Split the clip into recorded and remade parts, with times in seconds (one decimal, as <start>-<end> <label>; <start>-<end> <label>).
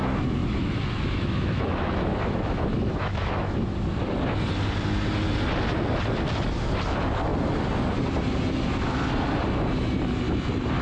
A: 0.0-0.4 recorded; 0.4-3.8 remade; 3.8-10.8 recorded